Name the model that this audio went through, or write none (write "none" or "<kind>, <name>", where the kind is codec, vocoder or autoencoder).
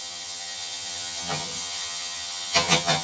vocoder, HiFi-GAN